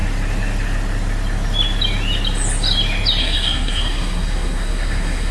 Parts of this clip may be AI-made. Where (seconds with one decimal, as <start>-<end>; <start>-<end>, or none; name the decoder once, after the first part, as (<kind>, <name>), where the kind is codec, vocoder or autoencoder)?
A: 3.2-5.3 (codec, SNAC)